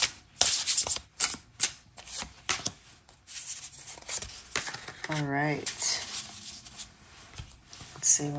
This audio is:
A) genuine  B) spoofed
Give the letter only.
A